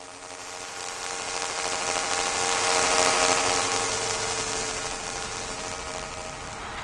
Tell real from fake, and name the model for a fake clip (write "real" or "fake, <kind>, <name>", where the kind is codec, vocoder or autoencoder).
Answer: real